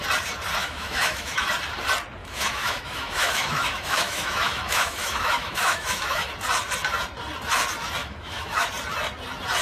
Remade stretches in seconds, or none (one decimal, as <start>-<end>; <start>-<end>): 0.6-1.5; 2.2-6.3; 8.0-8.7